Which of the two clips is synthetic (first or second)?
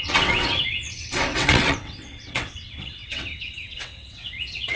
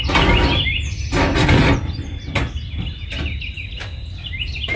first